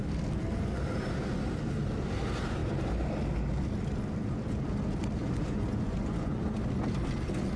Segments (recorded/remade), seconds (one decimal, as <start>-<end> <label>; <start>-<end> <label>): 0.0-5.2 recorded; 5.2-6.5 remade; 6.5-7.6 recorded